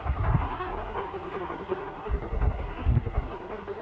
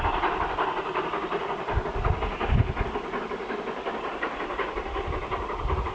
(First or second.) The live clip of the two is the second